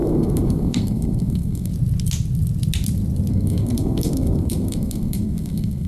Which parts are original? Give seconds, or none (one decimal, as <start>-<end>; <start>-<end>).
1.7-3.3